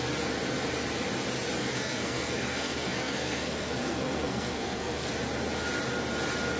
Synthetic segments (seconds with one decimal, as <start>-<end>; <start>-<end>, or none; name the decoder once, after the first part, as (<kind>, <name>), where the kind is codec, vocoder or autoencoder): 1.6-5.1 (codec, SNAC)